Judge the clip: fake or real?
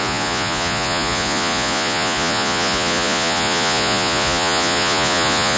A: fake